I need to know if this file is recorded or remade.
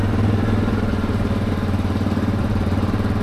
remade